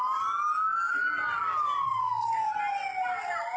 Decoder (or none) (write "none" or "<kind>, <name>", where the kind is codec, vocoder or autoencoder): none